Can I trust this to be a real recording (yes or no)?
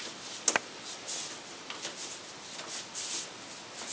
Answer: yes